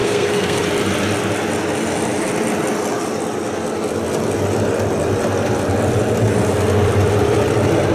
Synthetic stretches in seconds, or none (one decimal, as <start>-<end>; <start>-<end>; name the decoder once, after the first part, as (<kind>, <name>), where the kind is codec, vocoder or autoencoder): 0.0-0.6 (codec, SNAC)